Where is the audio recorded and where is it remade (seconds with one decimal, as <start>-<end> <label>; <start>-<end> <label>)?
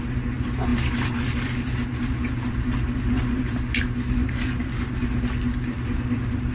0.0-6.5 recorded